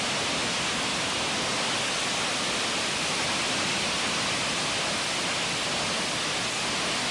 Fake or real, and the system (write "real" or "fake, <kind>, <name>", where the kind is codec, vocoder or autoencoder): real